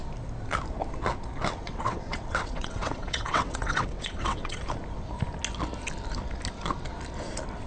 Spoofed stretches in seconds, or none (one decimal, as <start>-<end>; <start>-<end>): 1.6-4.6